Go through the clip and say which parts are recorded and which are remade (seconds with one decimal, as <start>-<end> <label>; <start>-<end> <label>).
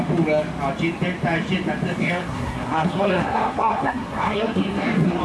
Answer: 0.0-2.0 recorded; 2.0-5.2 remade